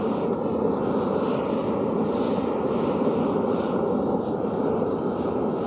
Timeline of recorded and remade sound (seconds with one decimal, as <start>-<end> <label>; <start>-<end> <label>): 0.0-5.7 recorded